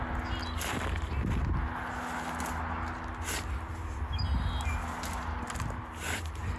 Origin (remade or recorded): recorded